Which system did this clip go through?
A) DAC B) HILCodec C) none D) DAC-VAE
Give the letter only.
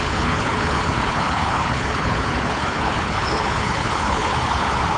B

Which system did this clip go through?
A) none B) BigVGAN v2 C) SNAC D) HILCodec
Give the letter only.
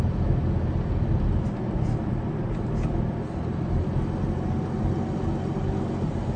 A